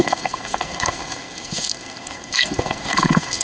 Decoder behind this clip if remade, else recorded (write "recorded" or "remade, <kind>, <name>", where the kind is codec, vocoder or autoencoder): remade, codec, SNAC